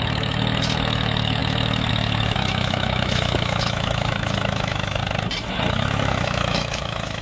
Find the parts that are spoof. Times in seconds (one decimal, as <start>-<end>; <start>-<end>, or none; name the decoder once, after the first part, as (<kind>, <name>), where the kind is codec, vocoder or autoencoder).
0.0-5.0 (autoencoder, DAC-VAE); 5.7-7.2